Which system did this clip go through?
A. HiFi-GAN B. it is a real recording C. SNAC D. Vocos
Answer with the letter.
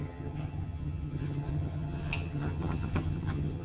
A